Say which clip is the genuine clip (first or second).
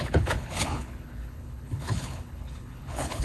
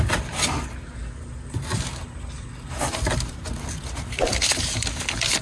second